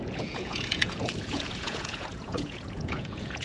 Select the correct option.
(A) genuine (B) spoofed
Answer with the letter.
B